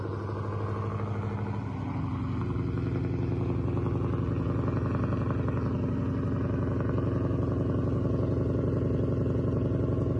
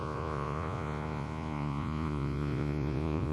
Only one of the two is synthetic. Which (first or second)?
second